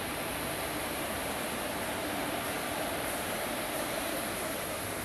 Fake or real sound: fake